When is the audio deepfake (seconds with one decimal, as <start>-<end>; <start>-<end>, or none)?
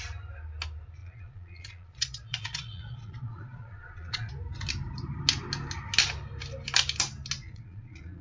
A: 1.0-4.3; 7.4-8.2